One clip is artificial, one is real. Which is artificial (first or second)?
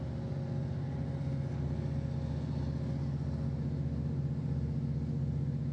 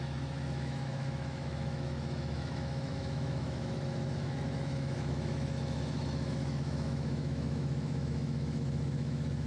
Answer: second